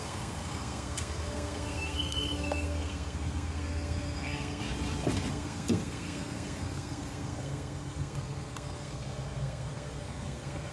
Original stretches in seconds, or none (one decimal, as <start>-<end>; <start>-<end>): 4.6-5.3

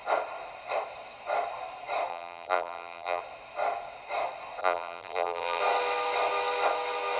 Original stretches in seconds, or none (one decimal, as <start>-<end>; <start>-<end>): 0.0-2.1; 3.2-4.6; 5.6-7.2